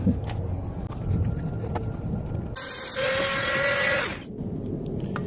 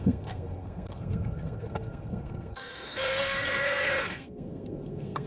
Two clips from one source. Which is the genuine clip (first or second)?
first